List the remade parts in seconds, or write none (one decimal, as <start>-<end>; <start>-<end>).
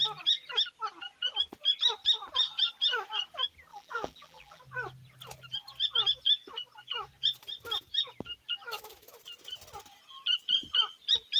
3.7-4.6